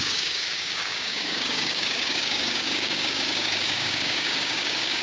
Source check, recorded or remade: remade